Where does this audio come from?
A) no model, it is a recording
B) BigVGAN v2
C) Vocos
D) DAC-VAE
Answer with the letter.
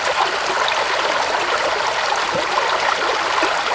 A